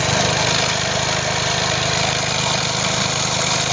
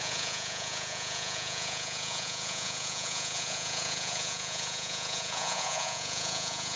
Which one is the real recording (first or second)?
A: first